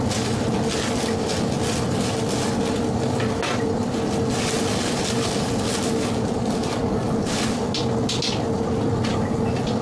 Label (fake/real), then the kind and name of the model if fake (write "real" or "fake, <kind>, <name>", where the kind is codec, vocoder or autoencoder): real